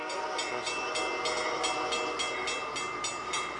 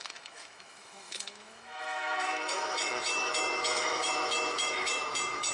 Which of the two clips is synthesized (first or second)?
second